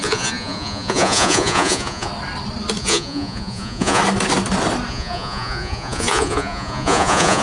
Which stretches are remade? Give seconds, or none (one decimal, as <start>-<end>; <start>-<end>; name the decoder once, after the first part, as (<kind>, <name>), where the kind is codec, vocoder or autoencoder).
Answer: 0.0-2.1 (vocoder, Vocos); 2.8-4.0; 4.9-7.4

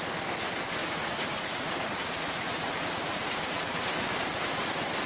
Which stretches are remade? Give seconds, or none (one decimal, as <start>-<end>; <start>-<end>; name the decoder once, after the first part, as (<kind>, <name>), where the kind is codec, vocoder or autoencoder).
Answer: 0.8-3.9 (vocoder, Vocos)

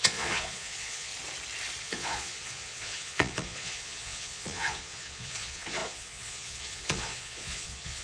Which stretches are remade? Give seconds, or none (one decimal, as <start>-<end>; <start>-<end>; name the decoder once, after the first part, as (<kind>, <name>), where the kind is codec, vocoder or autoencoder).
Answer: 0.0-1.1 (vocoder, Vocos); 1.8-8.0